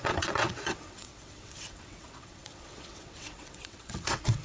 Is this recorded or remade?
remade